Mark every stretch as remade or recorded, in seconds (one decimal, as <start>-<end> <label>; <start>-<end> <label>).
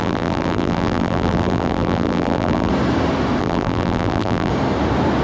0.0-2.7 remade; 2.7-3.4 recorded; 3.4-4.5 remade; 4.5-5.2 recorded